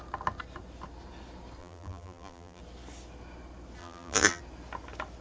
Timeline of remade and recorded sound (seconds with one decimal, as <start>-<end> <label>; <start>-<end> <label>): 0.0-1.6 recorded; 1.6-2.6 remade; 2.6-3.8 recorded; 3.8-4.4 remade; 4.4-5.2 recorded

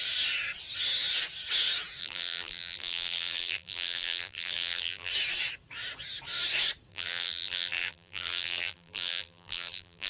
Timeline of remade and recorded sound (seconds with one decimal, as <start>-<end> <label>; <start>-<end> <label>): 0.0-2.0 recorded; 2.0-5.1 remade; 5.1-6.9 recorded; 6.9-10.1 remade

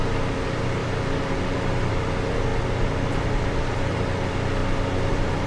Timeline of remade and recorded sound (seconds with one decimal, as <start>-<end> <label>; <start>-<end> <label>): 0.0-0.8 remade; 0.8-1.6 recorded; 1.6-2.5 remade; 2.5-3.1 recorded; 3.1-4.6 remade; 4.6-5.1 recorded; 5.1-5.5 remade

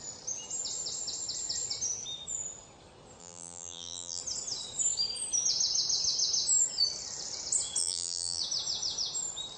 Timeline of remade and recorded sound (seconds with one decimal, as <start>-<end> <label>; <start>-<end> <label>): 0.0-3.2 recorded; 3.2-4.2 remade; 4.2-7.8 recorded; 7.8-8.4 remade; 8.4-9.6 recorded